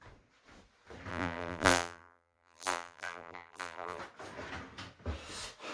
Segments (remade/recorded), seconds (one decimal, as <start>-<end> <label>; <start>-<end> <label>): 0.0-1.1 recorded; 1.1-4.0 remade; 4.0-5.7 recorded